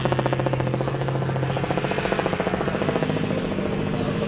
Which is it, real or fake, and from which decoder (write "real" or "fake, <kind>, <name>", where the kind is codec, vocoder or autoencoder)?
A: real